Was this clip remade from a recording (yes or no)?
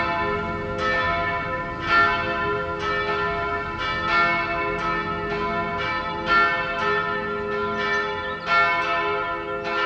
no